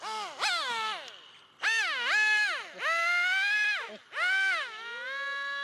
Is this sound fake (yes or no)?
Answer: no